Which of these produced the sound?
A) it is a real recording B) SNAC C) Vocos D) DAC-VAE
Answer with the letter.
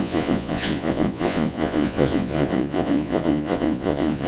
C